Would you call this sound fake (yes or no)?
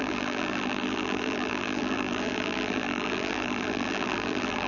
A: yes